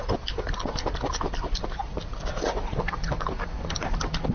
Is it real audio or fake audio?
real